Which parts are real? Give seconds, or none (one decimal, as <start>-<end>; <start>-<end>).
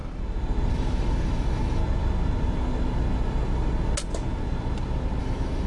0.0-0.7; 1.8-5.2